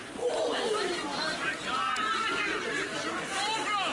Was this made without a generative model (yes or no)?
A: no